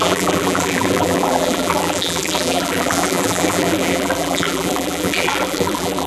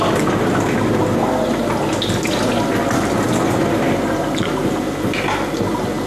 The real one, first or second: second